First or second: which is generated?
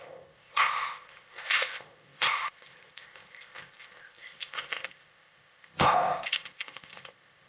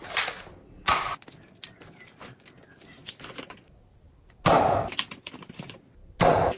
first